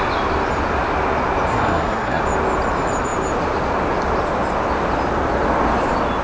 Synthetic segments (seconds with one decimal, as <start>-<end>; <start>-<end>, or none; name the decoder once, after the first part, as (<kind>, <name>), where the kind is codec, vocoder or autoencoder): 1.5-2.2 (codec, SNAC)